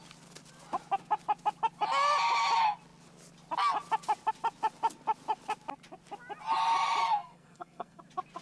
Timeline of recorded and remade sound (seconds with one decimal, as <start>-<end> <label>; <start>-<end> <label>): 0.0-7.0 recorded; 7.0-8.0 remade; 8.0-8.4 recorded